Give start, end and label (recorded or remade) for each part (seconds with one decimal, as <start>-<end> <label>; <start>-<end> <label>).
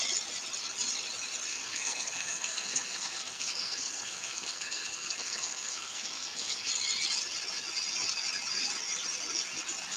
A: 0.0-1.5 recorded; 1.5-6.7 remade; 6.7-10.0 recorded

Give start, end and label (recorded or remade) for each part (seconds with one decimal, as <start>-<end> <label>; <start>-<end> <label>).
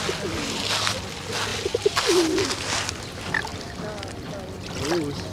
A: 0.0-1.5 recorded; 1.5-3.1 remade; 3.1-3.5 recorded; 3.5-4.4 remade; 4.4-5.3 recorded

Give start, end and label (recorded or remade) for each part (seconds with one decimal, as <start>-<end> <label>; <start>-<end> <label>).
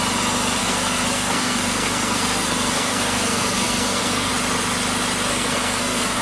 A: 0.0-0.6 recorded; 0.6-4.3 remade; 4.3-5.3 recorded; 5.3-6.2 remade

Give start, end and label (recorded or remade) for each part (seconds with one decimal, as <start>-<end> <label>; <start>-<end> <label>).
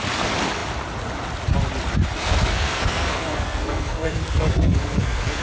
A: 0.0-2.2 recorded; 2.2-5.4 remade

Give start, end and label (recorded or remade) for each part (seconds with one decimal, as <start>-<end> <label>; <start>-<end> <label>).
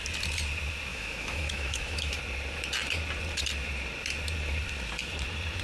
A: 0.0-0.9 recorded; 0.9-2.2 remade; 2.2-5.6 recorded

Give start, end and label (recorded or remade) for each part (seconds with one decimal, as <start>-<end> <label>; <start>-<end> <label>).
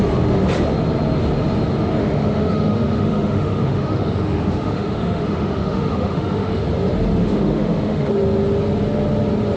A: 0.0-2.0 recorded; 2.0-6.6 remade; 6.6-7.2 recorded; 7.2-8.1 remade; 8.1-9.6 recorded